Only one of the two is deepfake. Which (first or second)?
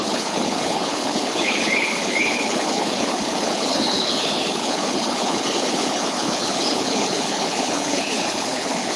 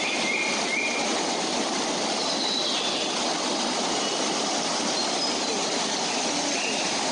first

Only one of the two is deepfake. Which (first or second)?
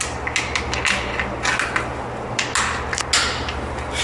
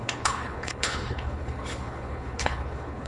second